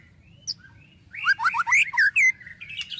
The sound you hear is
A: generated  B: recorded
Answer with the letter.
B